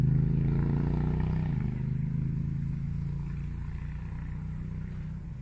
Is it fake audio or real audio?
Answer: real